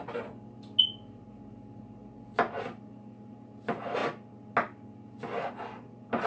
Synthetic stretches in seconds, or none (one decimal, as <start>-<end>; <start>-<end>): none